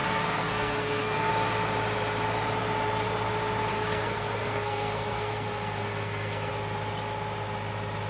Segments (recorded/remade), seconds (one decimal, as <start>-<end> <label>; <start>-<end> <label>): 0.0-1.3 remade; 1.3-3.7 recorded; 3.7-6.5 remade; 6.5-8.1 recorded

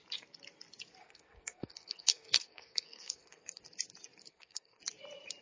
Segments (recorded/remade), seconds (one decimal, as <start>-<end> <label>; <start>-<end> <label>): 0.0-1.0 recorded; 1.0-3.6 remade; 3.6-4.3 recorded; 4.3-4.8 remade; 4.8-5.4 recorded

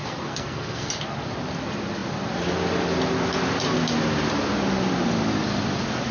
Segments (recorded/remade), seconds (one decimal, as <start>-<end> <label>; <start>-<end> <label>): 0.0-0.9 remade; 0.9-6.1 recorded

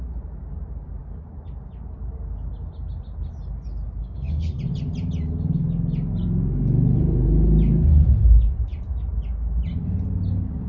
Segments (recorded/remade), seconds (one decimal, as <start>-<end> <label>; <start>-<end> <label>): 0.0-4.0 recorded; 4.0-4.6 remade; 4.6-10.7 recorded

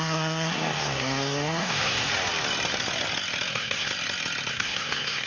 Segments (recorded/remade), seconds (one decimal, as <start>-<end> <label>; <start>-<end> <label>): 0.0-2.1 remade; 2.1-3.5 recorded; 3.5-3.9 remade; 3.9-4.5 recorded; 4.5-5.3 remade

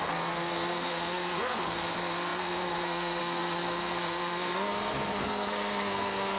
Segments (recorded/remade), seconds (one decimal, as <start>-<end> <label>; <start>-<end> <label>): 0.0-6.4 remade

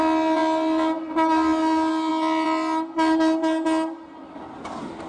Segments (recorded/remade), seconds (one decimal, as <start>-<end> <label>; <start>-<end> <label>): 0.0-5.1 recorded